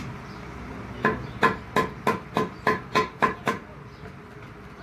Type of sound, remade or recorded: recorded